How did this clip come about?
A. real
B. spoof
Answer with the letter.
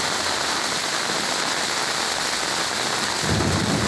A